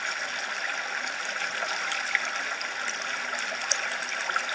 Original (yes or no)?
yes